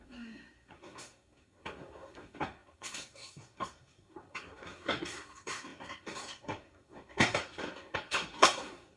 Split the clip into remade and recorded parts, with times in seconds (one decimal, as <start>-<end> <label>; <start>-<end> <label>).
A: 0.0-9.0 remade